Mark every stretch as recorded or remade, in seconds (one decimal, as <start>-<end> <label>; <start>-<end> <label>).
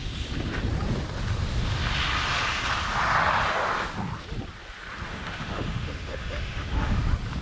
0.0-5.1 recorded; 5.1-7.0 remade; 7.0-7.4 recorded